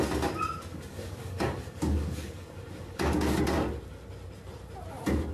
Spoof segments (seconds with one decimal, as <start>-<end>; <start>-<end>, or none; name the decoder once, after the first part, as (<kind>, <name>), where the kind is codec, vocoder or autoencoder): 0.7-3.4 (codec, DAC)